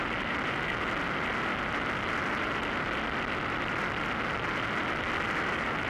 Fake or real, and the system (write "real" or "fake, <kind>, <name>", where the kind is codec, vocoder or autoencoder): real